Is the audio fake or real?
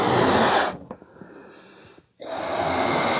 real